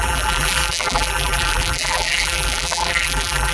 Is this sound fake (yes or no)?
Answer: yes